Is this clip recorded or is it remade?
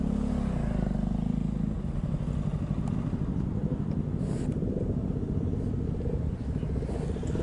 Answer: recorded